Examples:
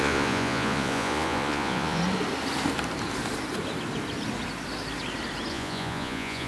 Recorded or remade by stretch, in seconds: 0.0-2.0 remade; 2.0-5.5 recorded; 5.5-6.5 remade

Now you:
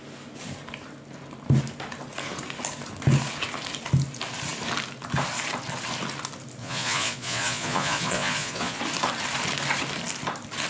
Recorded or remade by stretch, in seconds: 0.0-6.6 recorded; 6.6-8.8 remade; 8.8-10.7 recorded

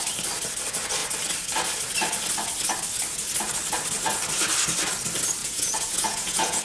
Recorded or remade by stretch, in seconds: 0.0-5.4 recorded; 5.4-6.6 remade